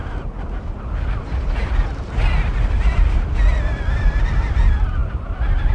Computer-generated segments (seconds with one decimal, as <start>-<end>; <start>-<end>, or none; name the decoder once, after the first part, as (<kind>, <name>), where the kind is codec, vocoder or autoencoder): none